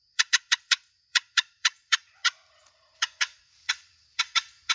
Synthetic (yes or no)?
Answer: yes